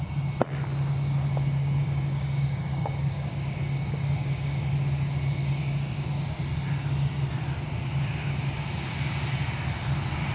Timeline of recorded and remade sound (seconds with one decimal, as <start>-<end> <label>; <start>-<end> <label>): 0.0-1.8 recorded; 1.8-4.7 remade; 4.7-5.4 recorded; 5.4-6.2 remade; 6.2-10.3 recorded